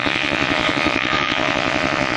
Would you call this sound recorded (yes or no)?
no